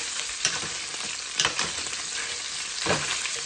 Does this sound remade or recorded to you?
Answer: recorded